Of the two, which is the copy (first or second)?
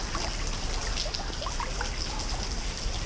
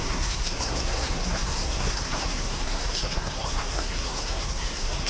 second